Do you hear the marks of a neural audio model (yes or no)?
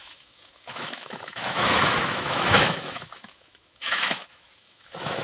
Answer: yes